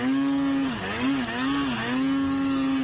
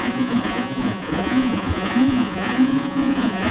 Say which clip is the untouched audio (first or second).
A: first